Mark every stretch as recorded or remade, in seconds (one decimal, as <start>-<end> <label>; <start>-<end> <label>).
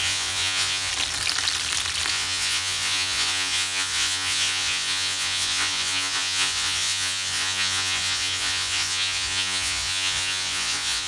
0.0-0.9 remade; 0.9-2.1 recorded; 2.1-11.1 remade